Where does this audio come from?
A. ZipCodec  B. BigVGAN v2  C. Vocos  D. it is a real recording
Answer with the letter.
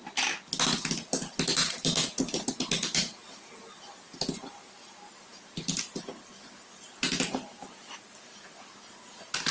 D